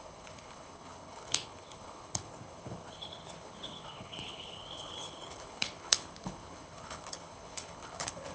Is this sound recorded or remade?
remade